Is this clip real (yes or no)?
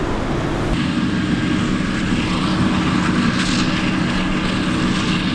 yes